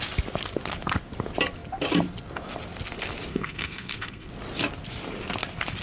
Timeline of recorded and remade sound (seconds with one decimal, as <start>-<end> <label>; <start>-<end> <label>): 0.0-3.3 recorded; 3.3-4.3 remade; 4.3-5.8 recorded